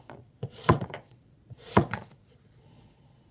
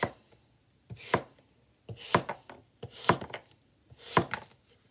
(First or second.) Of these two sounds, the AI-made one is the first